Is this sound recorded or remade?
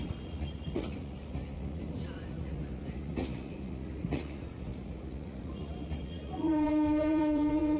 remade